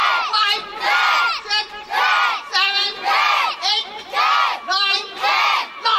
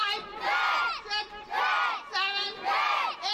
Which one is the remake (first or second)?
first